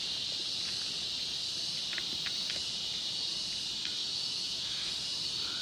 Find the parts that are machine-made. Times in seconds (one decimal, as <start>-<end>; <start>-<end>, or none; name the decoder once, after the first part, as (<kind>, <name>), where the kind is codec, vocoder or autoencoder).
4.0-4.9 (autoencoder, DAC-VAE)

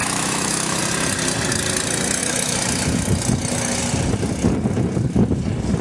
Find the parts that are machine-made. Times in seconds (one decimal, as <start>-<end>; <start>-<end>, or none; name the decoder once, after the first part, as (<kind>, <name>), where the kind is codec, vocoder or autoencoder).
0.0-0.8 (autoencoder, DAC-VAE)

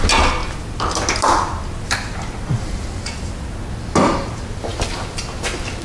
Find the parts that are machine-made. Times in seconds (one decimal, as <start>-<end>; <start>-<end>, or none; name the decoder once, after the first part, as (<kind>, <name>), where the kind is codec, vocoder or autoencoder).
none